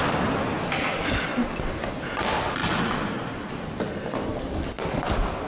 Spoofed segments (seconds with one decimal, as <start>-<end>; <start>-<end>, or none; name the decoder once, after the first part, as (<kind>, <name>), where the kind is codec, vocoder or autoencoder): none